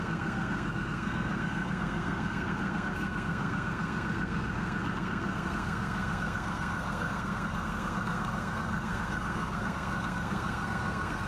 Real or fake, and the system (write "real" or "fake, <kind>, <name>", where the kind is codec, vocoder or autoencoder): fake, codec, SNAC